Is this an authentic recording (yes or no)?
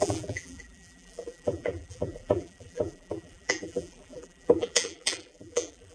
no